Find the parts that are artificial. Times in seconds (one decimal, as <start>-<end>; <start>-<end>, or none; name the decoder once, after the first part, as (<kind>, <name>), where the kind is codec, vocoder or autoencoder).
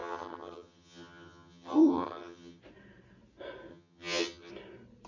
0.0-2.6 (vocoder, HiFi-GAN); 3.7-4.5